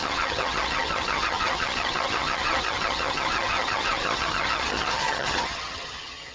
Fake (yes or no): yes